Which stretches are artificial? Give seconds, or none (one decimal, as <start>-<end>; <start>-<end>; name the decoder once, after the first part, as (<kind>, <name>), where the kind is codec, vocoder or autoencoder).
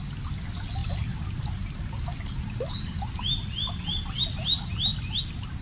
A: none